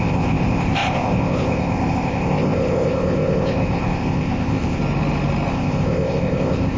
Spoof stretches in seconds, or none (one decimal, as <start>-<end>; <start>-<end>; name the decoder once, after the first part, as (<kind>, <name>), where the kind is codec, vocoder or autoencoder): 0.0-4.8 (codec, ZipCodec); 5.5-6.8